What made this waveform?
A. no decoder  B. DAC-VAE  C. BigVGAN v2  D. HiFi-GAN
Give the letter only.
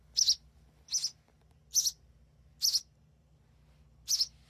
A